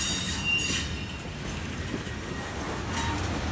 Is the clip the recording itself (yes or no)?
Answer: yes